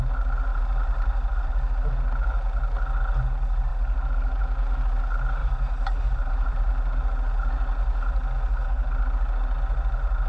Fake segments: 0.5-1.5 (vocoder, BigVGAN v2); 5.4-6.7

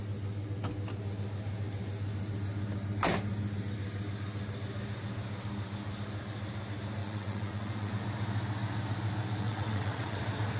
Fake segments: 7.0-7.9 (vocoder, WaveNeXt); 9.4-10.2

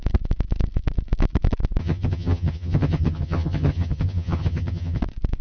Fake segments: 1.8-5.0 (vocoder, HiFi-GAN)

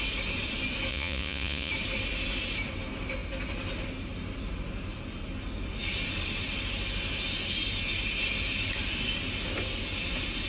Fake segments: 0.9-1.7 (vocoder, Vocos)

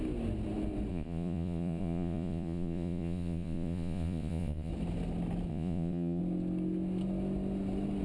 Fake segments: 0.9-4.7 (vocoder, Vocos); 5.5-6.2

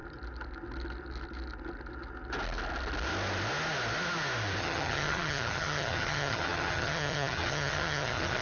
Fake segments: 4.6-8.4 (vocoder, HiFi-GAN)

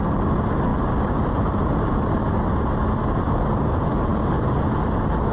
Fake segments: none

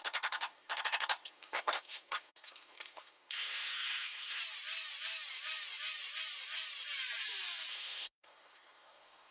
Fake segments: 0.0-4.4 (codec, SNAC); 7.7-9.3